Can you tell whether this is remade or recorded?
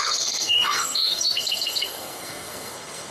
remade